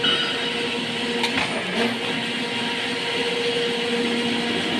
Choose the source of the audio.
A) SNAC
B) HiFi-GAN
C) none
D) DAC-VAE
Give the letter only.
C